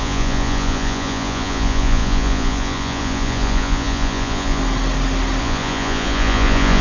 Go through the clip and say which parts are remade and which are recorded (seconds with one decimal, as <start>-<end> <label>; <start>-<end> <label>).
0.0-4.6 remade; 4.6-5.4 recorded; 5.4-6.8 remade